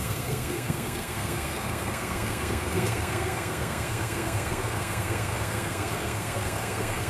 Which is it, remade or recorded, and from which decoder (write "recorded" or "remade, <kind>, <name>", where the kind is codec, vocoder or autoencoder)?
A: remade, codec, SNAC